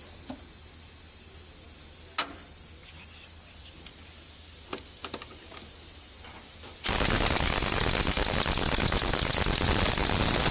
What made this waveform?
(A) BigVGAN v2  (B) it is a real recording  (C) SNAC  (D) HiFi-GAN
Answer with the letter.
B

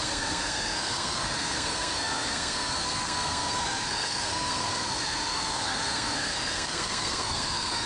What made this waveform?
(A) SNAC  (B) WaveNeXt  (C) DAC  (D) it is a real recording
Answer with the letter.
A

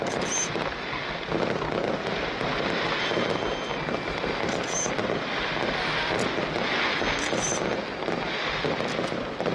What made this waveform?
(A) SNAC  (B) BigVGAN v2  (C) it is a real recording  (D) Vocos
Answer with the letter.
C